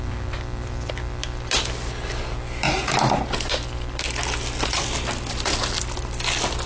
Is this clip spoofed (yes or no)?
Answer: no